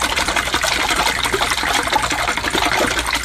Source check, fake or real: real